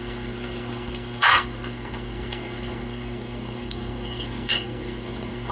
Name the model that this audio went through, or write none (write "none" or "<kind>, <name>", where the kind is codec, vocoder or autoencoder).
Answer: codec, SNAC